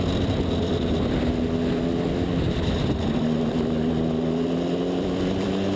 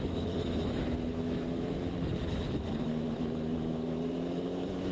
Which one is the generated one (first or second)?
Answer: second